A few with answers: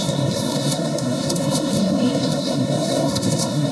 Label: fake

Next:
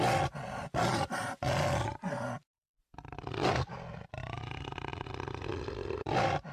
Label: real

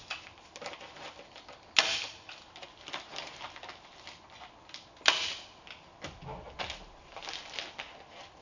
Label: real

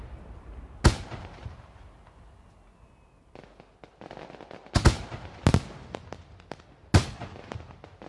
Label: real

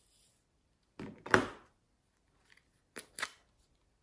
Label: real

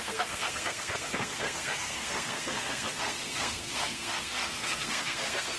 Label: fake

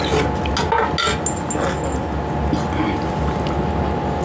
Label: real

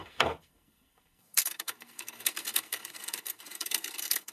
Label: fake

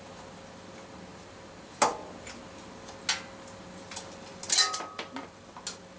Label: real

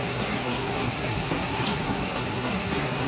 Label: fake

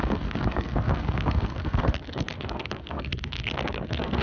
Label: fake